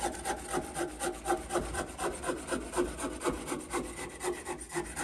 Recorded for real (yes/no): yes